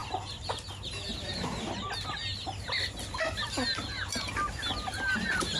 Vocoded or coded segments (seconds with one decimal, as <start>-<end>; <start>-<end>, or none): none